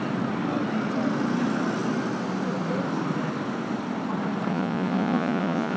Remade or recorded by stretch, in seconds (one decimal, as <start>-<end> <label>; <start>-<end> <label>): 0.0-4.5 recorded; 4.5-5.8 remade

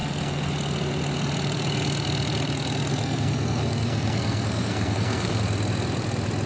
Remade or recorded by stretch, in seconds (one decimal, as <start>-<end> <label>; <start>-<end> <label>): 0.0-0.5 remade; 0.5-2.9 recorded; 2.9-5.4 remade; 5.4-6.5 recorded

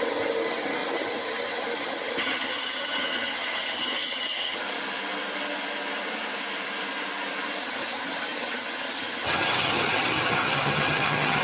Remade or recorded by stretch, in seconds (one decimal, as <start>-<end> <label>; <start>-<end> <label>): 0.0-4.6 remade; 4.6-7.6 recorded; 7.6-11.4 remade

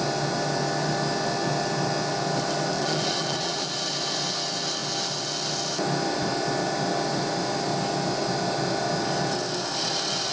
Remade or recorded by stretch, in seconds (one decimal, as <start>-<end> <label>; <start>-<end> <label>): 0.0-2.8 recorded; 2.8-3.7 remade; 3.7-10.3 recorded

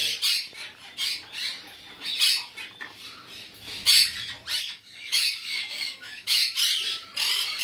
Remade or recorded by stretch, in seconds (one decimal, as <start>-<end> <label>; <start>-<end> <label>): 0.0-4.6 recorded; 4.6-6.4 remade; 6.4-7.6 recorded